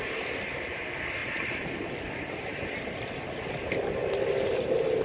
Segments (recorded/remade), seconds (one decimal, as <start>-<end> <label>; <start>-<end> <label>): 0.0-1.2 recorded; 1.2-2.6 remade; 2.6-4.0 recorded; 4.0-5.0 remade